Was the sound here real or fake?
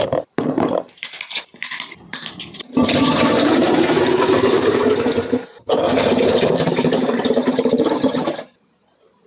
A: fake